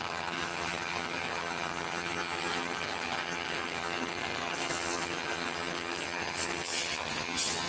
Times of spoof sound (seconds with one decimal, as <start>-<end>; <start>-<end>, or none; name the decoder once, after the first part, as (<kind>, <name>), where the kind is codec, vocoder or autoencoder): 0.0-7.7 (vocoder, HiFi-GAN)